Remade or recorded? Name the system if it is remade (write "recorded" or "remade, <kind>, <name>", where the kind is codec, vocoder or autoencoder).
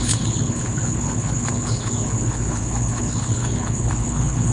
remade, codec, HILCodec